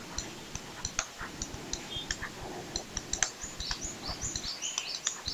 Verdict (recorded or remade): recorded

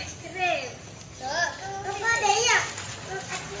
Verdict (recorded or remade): recorded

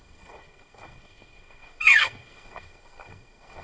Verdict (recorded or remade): remade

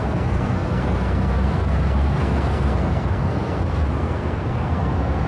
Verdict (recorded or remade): remade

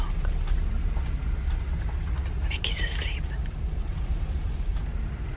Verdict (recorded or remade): recorded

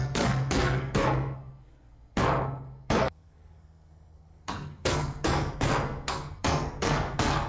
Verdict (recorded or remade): remade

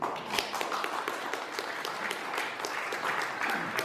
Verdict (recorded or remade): recorded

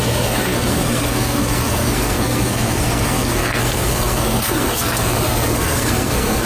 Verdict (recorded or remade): remade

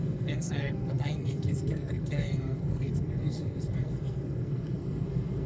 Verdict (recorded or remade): remade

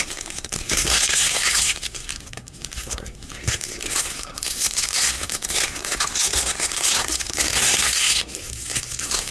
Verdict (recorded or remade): remade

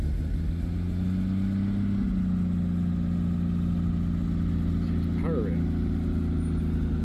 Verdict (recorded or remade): recorded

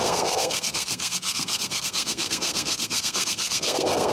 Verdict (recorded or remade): remade